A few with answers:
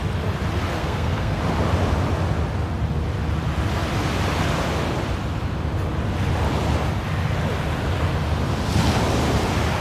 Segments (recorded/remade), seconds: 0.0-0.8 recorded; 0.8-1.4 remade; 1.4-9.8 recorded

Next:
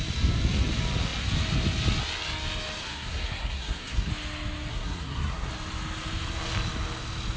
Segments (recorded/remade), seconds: 0.0-2.8 recorded; 2.8-4.1 remade; 4.1-4.7 recorded; 4.7-5.5 remade; 5.5-7.4 recorded

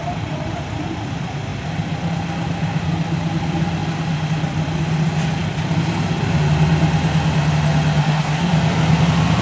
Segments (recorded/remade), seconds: 0.0-8.0 recorded; 8.0-8.5 remade; 8.5-9.4 recorded

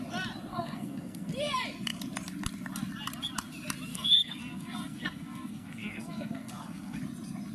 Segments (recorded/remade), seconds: 0.0-0.5 recorded; 0.5-1.3 remade; 1.3-3.9 recorded; 3.9-7.0 remade; 7.0-7.5 recorded